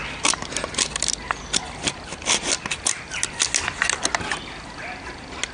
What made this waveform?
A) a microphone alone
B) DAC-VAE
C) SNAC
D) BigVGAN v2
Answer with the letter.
A